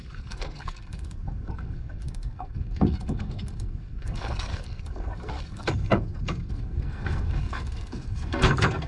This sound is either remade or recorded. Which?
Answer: remade